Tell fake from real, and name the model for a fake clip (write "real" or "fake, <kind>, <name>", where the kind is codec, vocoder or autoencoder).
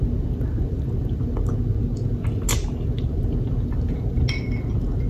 real